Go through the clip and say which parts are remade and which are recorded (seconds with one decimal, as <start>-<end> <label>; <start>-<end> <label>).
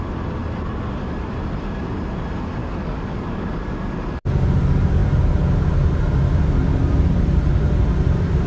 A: 0.0-2.6 recorded; 2.6-4.1 remade; 4.1-8.5 recorded